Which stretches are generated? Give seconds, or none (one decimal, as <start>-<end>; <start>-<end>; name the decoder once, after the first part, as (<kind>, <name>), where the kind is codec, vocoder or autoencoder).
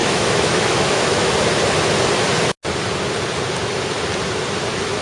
0.0-1.3 (autoencoder, DAC-VAE)